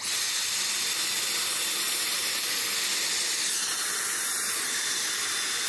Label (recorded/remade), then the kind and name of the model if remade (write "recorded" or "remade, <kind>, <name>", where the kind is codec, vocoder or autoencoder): recorded